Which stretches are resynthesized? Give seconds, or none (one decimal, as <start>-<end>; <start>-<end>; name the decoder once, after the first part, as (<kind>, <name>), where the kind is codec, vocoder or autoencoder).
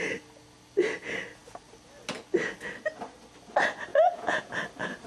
3.9-4.5 (vocoder, Vocos)